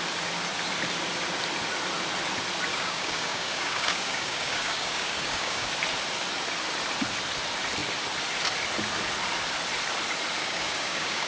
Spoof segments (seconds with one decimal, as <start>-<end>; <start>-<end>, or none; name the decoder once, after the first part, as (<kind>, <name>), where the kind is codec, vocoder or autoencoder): 2.7-5.7 (codec, DAC); 10.4-11.3